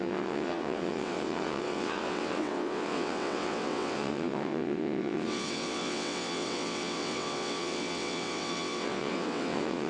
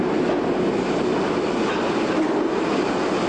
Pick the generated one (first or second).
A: first